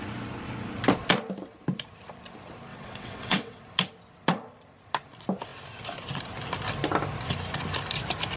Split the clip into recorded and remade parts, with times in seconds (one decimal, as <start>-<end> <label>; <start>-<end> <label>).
0.0-2.7 recorded; 2.7-3.6 remade; 3.6-8.4 recorded